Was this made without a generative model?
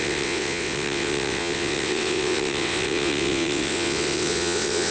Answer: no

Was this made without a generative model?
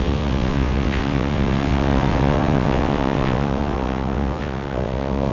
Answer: no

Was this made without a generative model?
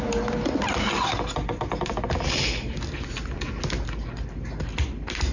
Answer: yes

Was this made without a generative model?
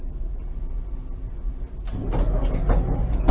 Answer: yes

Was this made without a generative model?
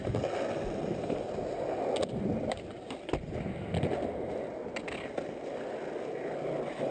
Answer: yes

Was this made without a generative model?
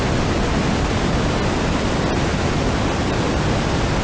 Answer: yes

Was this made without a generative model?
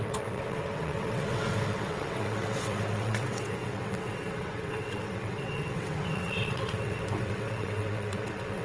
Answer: no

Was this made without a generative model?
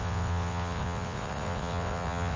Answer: no